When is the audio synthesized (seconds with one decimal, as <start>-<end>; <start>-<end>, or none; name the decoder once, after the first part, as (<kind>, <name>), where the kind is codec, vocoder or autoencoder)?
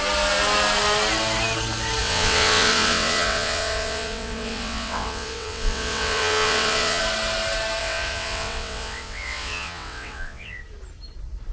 2.0-7.0 (vocoder, WaveNeXt); 7.8-10.6